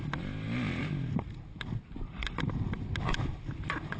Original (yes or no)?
yes